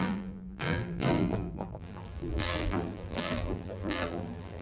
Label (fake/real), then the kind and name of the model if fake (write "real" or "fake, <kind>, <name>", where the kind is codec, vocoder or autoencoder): fake, vocoder, BigVGAN v2